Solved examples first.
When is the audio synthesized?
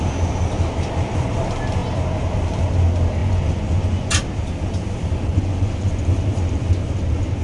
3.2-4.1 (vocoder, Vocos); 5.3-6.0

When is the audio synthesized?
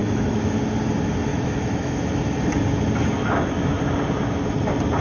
0.0-0.6 (autoencoder, DAC-VAE); 1.3-2.2; 3.2-3.8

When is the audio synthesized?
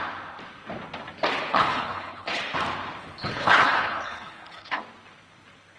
1.5-2.4 (codec, HILCodec); 3.0-4.8